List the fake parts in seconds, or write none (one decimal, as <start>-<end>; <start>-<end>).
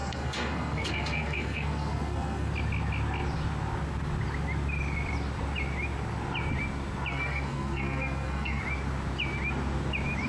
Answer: 0.0-2.5; 7.1-8.6